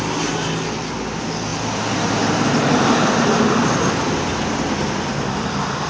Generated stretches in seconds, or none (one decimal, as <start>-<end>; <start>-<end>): none

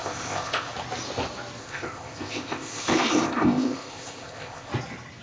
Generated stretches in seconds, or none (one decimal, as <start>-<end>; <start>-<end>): 0.0-0.7; 1.6-4.7

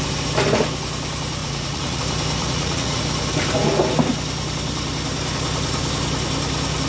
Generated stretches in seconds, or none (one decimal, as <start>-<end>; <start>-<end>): 1.4-2.0; 2.4-3.0

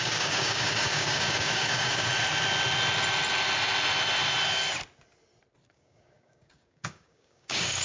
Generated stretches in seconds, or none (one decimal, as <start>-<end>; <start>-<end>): 0.0-2.1; 5.7-7.8

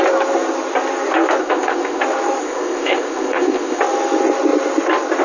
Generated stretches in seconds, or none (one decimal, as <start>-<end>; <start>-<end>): 1.4-2.0; 2.4-3.8

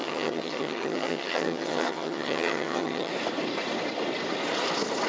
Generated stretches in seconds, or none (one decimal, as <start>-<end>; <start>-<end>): 0.0-3.1

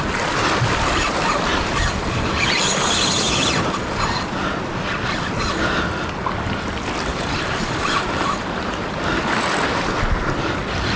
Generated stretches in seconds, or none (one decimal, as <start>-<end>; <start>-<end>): 7.1-8.9